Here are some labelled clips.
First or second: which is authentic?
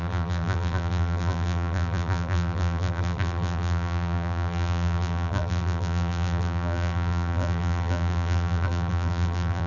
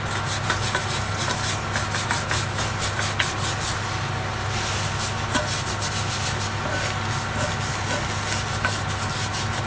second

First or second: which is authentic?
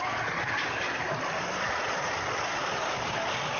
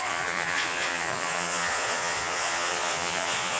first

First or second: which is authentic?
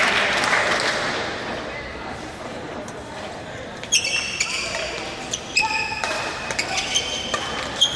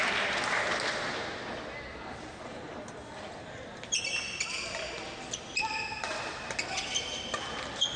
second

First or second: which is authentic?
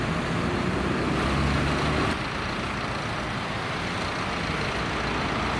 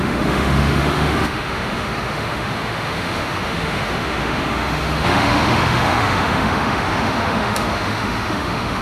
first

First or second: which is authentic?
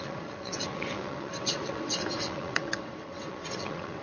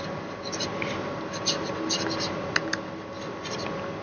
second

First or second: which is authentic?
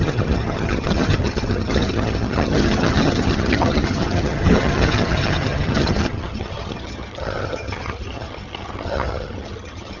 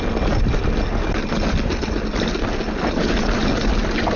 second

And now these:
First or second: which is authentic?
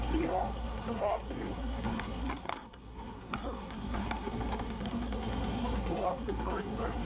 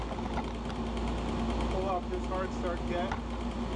second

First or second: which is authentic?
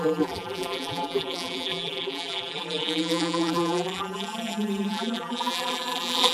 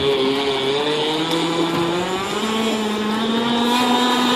second